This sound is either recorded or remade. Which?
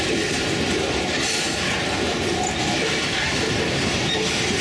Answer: recorded